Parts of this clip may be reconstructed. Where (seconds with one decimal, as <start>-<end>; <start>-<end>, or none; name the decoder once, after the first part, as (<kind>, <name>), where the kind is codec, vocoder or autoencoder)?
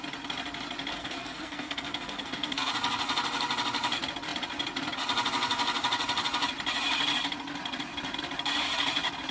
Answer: 0.9-2.7 (codec, SNAC)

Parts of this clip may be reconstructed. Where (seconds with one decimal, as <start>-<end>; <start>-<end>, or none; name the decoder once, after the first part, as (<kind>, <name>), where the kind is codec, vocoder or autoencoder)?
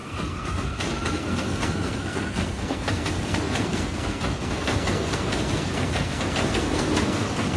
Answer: 0.0-7.6 (codec, SNAC)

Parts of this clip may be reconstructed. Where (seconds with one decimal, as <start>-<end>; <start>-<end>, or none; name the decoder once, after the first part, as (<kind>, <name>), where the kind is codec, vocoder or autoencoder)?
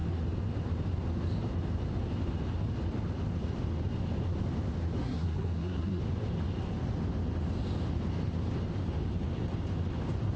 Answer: 5.0-6.0 (codec, SNAC)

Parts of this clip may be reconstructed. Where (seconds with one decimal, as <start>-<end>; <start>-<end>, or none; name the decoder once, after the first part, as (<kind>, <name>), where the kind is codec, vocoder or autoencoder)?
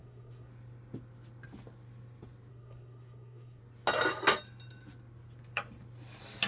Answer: 0.0-0.5 (codec, SNAC); 2.5-3.6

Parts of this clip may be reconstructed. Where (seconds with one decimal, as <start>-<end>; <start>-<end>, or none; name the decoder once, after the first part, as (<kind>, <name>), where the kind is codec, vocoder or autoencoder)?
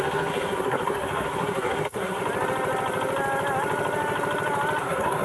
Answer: 0.0-2.2 (codec, SNAC); 4.8-5.2